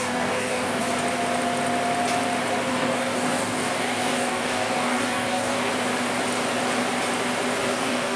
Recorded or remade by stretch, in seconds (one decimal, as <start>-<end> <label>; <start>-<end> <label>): 0.0-0.8 remade; 0.8-2.7 recorded; 2.7-5.7 remade; 5.7-7.6 recorded; 7.6-8.2 remade

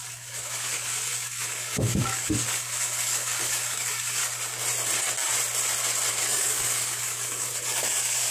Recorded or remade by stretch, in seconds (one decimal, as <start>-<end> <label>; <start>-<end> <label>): 0.0-4.2 remade; 4.2-6.1 recorded; 6.1-8.3 remade

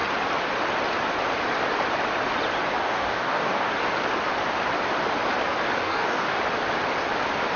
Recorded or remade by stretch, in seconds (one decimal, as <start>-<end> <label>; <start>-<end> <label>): 0.0-2.8 recorded; 2.8-3.7 remade; 3.7-5.8 recorded; 5.8-6.4 remade; 6.4-7.6 recorded

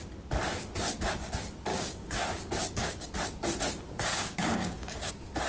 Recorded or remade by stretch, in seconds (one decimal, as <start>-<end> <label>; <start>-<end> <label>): 0.0-1.7 recorded; 1.7-2.2 remade; 2.2-2.6 recorded; 2.6-3.1 remade; 3.1-4.1 recorded; 4.1-5.1 remade; 5.1-5.5 recorded

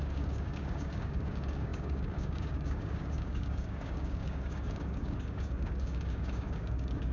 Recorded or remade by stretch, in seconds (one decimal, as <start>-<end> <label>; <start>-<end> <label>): 0.0-7.1 remade

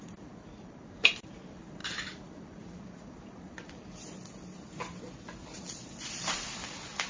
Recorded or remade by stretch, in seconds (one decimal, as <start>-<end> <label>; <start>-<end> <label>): 0.0-7.1 recorded

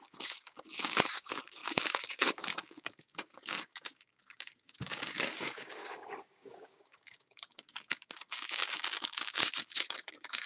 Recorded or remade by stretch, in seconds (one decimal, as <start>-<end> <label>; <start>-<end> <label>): 0.0-10.5 remade

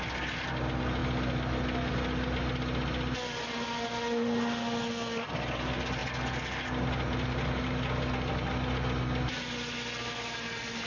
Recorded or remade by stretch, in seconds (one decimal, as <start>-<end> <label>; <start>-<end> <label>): 0.0-10.9 recorded